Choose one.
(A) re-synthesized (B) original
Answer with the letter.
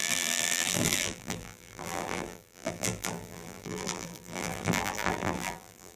A